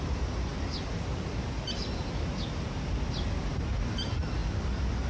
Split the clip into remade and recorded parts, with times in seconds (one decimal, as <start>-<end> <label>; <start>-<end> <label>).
0.0-5.1 recorded